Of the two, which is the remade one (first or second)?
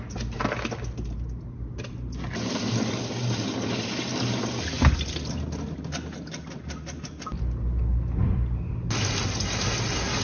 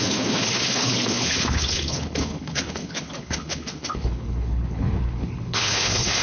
second